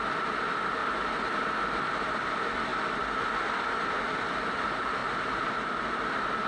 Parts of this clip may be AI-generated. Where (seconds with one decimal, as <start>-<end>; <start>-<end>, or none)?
0.0-0.8; 1.9-5.0